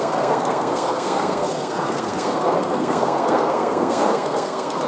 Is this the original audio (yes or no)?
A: no